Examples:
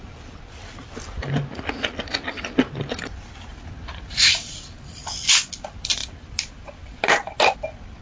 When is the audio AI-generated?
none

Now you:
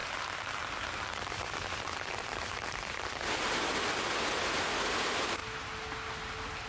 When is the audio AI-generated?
0.0-5.4 (vocoder, BigVGAN v2)

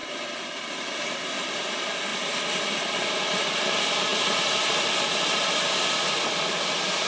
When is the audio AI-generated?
none